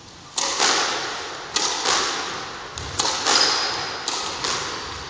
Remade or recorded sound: recorded